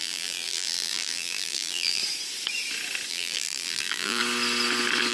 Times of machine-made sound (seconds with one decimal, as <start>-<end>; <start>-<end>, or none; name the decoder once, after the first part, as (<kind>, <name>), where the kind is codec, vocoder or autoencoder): 0.0-2.0 (vocoder, BigVGAN v2); 3.1-4.2